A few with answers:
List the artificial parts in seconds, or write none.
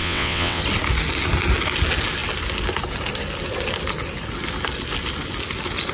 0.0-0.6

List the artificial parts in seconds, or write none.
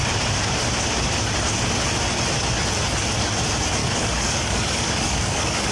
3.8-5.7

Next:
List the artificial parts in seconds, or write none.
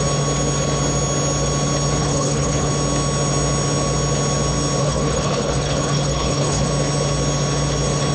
2.0-2.7; 4.8-6.7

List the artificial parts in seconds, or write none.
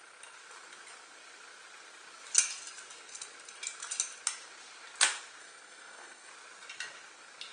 5.4-6.3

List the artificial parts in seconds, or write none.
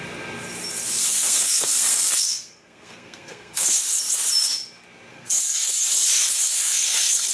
0.9-3.8; 5.1-5.8; 6.2-7.3